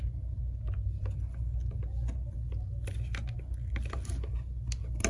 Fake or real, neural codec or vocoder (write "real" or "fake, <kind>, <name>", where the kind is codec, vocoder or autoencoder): real